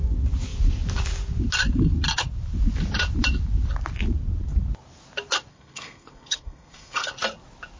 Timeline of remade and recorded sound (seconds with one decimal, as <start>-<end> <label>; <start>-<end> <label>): 0.0-5.5 recorded; 5.5-7.1 remade; 7.1-7.8 recorded